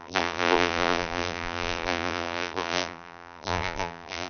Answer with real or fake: fake